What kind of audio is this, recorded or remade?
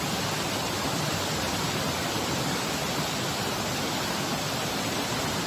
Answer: remade